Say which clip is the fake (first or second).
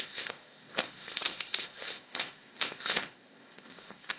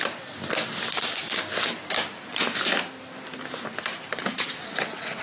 first